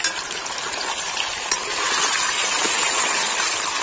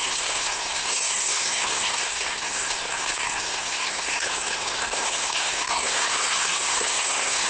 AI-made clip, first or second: second